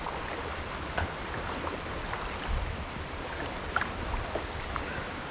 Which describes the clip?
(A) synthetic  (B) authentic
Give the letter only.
B